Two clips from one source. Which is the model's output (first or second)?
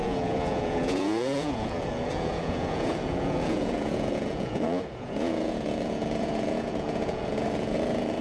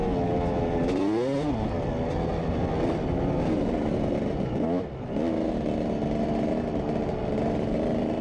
first